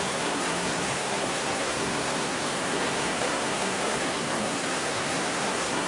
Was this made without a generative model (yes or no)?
no